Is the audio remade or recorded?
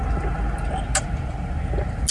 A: recorded